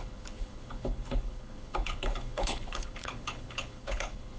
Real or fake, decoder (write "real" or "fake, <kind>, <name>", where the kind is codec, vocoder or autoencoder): fake, codec, HILCodec